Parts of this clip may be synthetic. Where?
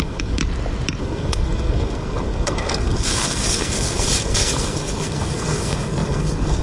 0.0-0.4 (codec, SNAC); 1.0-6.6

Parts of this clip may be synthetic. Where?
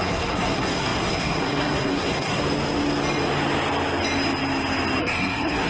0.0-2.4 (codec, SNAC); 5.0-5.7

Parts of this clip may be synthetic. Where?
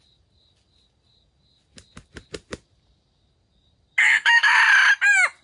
4.0-4.6 (codec, SNAC)